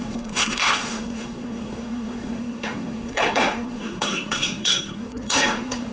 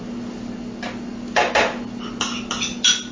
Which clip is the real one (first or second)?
second